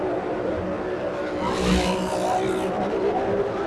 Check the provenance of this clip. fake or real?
real